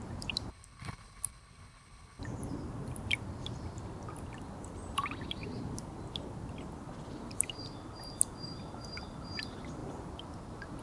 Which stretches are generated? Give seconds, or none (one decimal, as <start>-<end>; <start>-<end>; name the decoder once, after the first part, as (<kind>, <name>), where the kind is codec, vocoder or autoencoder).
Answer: 0.5-2.2 (codec, HILCodec)